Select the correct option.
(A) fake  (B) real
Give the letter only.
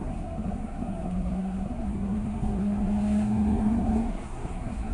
A